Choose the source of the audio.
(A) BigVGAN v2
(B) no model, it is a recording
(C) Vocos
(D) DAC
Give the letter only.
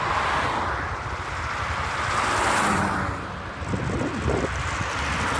B